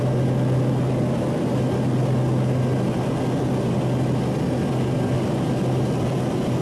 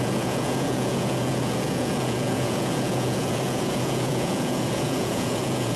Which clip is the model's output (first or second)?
second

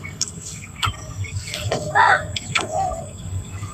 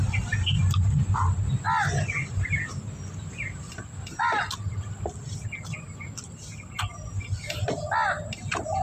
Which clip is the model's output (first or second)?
first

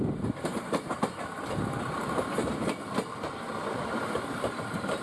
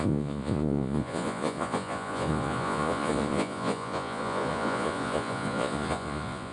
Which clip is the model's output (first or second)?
second